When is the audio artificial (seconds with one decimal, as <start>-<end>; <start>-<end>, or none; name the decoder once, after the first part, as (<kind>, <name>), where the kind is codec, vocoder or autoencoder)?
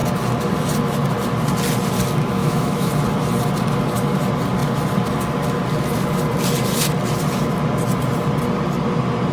2.4-2.9 (autoencoder, DAC-VAE)